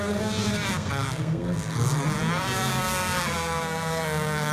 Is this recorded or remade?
remade